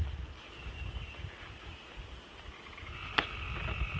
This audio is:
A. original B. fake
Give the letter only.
A